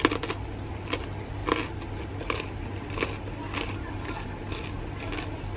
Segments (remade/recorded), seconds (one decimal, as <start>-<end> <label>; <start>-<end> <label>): 0.0-5.6 recorded